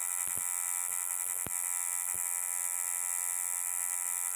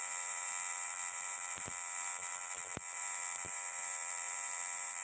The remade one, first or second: second